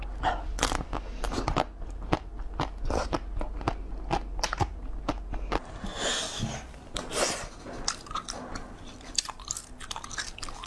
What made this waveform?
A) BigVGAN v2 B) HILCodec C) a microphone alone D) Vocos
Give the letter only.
C